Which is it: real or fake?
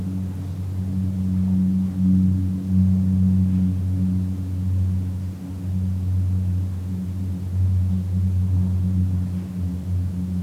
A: real